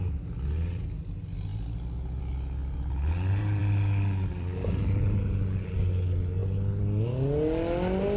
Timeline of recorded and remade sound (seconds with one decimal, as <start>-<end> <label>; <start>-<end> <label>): 0.0-3.6 recorded; 3.6-5.0 remade; 5.0-8.2 recorded